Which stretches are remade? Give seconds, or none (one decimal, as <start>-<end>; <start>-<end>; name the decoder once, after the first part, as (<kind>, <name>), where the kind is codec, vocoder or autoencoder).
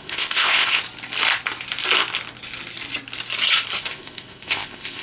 0.0-0.8 (codec, ZipCodec); 3.8-5.0